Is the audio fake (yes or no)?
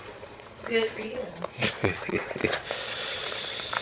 yes